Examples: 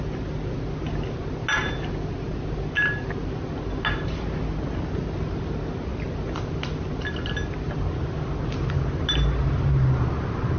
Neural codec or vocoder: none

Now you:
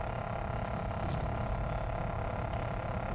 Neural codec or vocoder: none